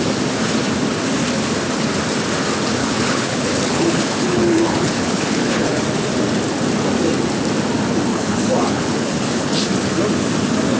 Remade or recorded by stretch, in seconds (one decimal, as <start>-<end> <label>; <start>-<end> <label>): 0.0-2.8 recorded; 2.8-5.8 remade; 5.8-8.1 recorded; 8.1-9.6 remade; 9.6-10.8 recorded